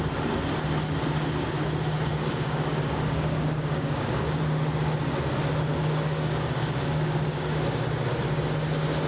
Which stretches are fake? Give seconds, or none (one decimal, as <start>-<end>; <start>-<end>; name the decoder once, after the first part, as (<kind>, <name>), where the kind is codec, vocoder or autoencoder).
2.1-4.4 (codec, DAC); 5.7-7.8